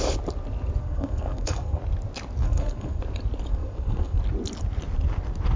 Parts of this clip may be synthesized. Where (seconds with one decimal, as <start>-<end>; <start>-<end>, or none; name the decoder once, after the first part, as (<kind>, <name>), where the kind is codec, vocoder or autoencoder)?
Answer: 0.8-1.8 (codec, SNAC); 2.4-3.0; 3.5-4.2